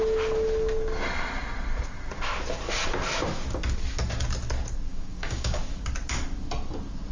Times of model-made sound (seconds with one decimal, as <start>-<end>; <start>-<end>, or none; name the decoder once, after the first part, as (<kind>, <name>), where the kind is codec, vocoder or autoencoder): 4.9-5.6 (codec, DAC)